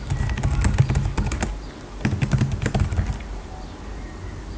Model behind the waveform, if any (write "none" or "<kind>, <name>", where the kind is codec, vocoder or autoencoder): none